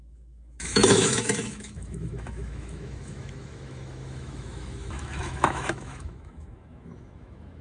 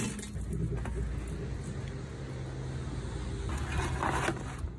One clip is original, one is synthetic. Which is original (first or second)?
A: second